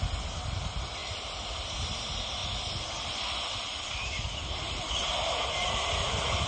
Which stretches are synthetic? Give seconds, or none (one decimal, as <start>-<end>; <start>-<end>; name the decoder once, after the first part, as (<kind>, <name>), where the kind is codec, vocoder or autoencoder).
1.0-1.8 (vocoder, BigVGAN v2)